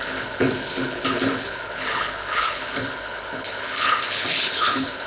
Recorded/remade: remade